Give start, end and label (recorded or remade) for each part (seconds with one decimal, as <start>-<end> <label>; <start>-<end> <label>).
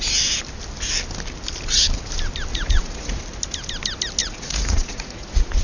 0.0-2.5 recorded; 2.5-3.2 remade; 3.2-4.2 recorded; 4.2-5.6 remade